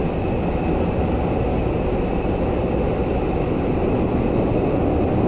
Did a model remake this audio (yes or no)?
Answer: no